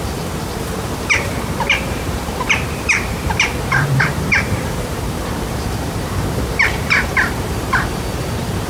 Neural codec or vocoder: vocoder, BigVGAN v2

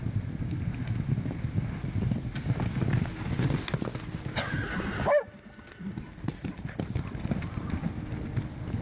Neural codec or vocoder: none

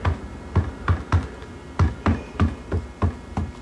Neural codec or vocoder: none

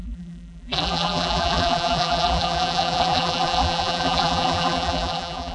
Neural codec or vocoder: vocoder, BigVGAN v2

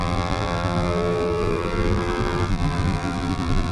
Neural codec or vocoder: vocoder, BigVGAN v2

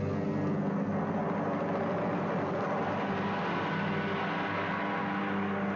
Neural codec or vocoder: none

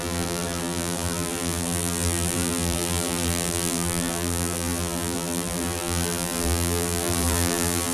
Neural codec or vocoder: vocoder, BigVGAN v2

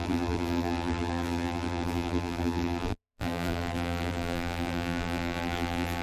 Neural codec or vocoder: vocoder, BigVGAN v2